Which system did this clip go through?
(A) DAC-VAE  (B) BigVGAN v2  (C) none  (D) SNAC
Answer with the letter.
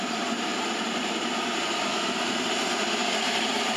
B